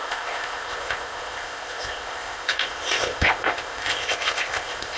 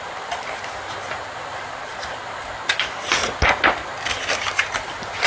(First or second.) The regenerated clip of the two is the first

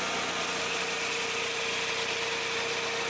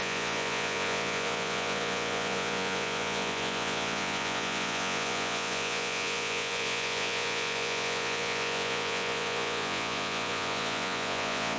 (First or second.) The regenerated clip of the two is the second